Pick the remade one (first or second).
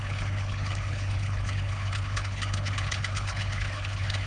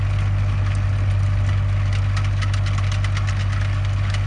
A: first